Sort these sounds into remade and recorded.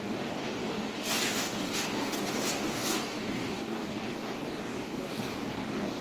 remade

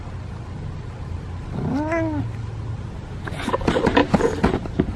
recorded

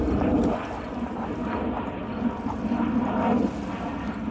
recorded